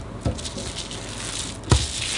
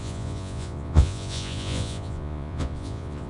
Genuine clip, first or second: first